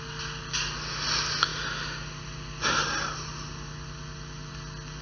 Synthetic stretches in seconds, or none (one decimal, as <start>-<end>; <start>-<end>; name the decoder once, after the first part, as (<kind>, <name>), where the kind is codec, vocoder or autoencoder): none